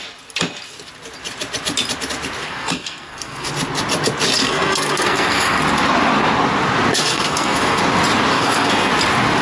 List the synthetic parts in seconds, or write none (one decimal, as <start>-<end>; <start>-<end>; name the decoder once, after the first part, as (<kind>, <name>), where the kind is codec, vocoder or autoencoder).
2.4-3.5 (codec, SNAC); 4.4-5.6; 7.0-7.8; 8.3-8.9